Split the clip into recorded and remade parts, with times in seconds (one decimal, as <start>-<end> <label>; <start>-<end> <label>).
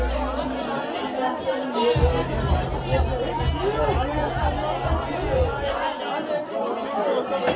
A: 0.0-5.1 recorded; 5.1-6.0 remade; 6.0-7.6 recorded